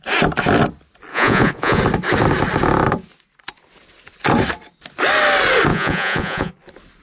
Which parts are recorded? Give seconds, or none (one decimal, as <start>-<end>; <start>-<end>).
0.0-1.1; 1.8-5.7; 6.5-7.0